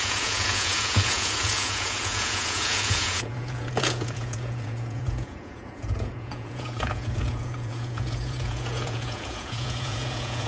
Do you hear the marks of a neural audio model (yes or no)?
yes